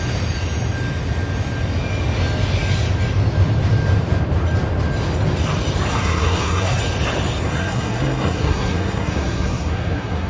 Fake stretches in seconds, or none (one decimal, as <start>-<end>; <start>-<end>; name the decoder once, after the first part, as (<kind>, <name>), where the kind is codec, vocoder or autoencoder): 5.9-6.8 (codec, SNAC); 7.5-10.3